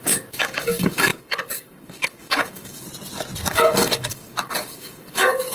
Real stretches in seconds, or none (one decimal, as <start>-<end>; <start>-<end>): 2.9-3.5